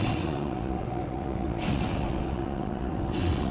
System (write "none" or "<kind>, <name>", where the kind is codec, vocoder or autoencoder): vocoder, WaveNeXt